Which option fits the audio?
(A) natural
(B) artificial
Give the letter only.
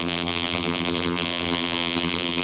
B